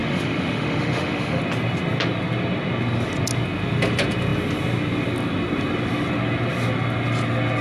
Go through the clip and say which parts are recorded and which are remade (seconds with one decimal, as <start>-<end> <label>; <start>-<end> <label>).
0.0-1.4 remade; 1.4-7.6 recorded